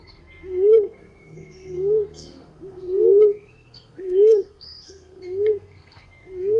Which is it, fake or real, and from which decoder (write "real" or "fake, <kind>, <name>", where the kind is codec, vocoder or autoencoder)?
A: fake, codec, SNAC